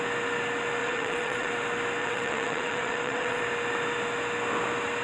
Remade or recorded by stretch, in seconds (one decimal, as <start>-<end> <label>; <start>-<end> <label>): 0.0-0.8 recorded; 0.8-1.5 remade; 1.5-2.0 recorded; 2.0-3.4 remade; 3.4-5.0 recorded

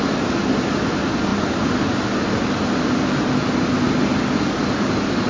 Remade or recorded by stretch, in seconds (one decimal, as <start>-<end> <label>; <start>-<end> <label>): 0.0-5.3 recorded

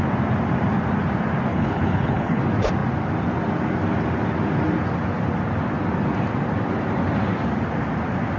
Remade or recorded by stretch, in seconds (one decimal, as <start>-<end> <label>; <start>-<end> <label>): 0.0-1.5 recorded; 1.5-2.4 remade; 2.4-8.4 recorded

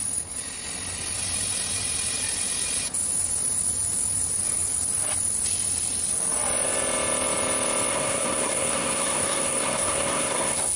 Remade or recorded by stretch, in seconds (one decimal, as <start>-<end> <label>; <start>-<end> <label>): 0.0-7.9 recorded; 7.9-10.8 remade

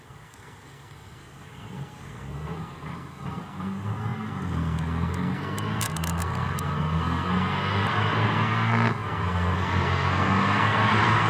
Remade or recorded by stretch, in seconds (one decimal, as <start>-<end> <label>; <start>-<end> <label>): 0.0-11.3 remade

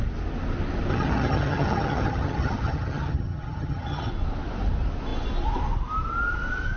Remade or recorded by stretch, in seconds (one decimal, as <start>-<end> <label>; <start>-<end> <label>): 0.0-0.9 recorded; 0.9-4.1 remade; 4.1-6.8 recorded